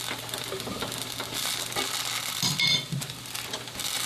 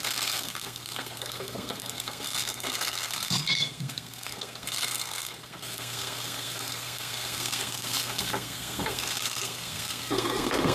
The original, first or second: first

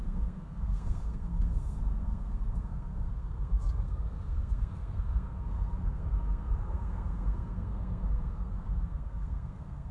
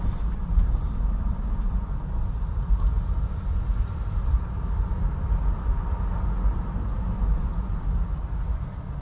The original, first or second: second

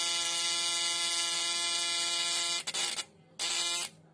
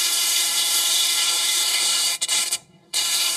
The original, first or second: first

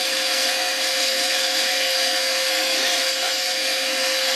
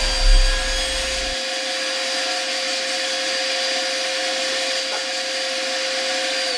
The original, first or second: second